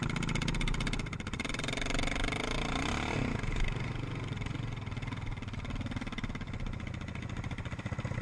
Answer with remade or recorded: recorded